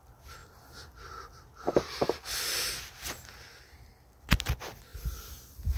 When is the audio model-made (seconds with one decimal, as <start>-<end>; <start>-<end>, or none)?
none